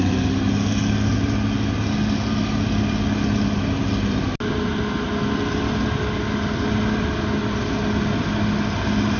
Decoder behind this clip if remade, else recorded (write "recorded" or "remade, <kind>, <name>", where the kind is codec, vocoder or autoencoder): recorded